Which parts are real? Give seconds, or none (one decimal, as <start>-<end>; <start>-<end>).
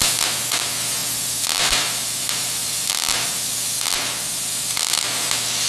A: 0.0-5.7